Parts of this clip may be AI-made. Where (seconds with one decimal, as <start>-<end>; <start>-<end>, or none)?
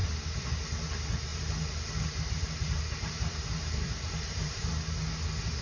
0.0-0.5; 1.3-4.7